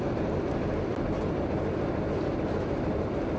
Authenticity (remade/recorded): recorded